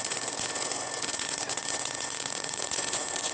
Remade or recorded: remade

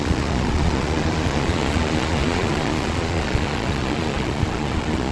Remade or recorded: remade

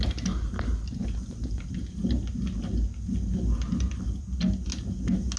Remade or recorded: recorded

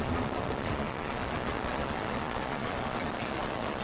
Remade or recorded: remade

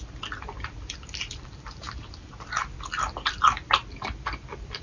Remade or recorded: recorded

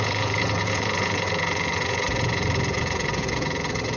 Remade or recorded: remade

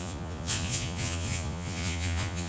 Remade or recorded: remade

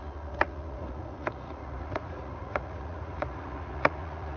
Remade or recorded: remade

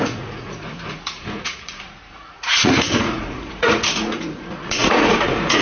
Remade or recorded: remade